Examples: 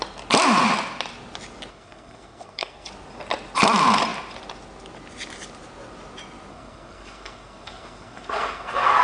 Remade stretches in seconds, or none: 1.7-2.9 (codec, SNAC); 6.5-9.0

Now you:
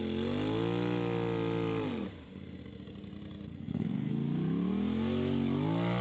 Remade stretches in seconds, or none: 3.5-4.1 (codec, SNAC)

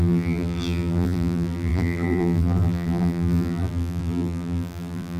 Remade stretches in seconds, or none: 0.0-5.2 (vocoder, BigVGAN v2)

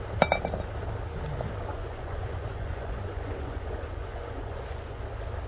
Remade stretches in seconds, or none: 1.7-5.0 (vocoder, Vocos)